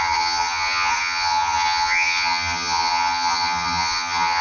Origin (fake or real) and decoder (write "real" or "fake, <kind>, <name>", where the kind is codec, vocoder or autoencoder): fake, vocoder, HiFi-GAN